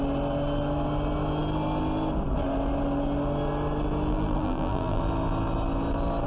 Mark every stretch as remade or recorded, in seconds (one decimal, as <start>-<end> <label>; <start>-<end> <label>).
0.0-4.1 recorded; 4.1-5.0 remade; 5.0-6.3 recorded